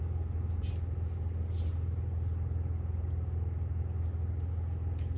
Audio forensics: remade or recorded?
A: recorded